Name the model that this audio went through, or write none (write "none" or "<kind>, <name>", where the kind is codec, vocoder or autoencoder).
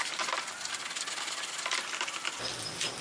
none